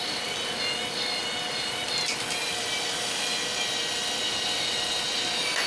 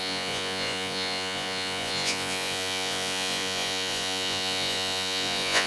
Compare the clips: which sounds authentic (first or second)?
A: first